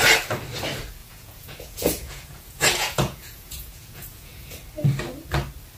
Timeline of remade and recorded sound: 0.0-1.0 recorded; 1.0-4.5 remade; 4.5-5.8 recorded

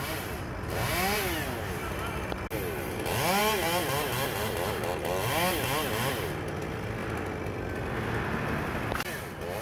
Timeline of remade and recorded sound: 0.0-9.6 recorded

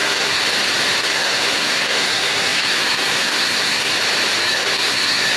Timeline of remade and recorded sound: 0.0-0.4 remade; 0.4-1.0 recorded; 1.0-3.9 remade; 3.9-4.4 recorded; 4.4-5.4 remade

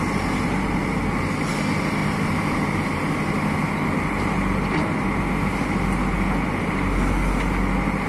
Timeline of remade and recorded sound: 0.0-2.0 recorded; 2.0-2.9 remade; 2.9-8.1 recorded

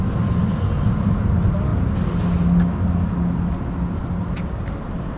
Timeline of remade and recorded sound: 0.0-5.2 recorded